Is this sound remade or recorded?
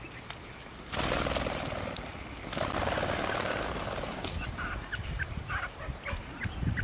recorded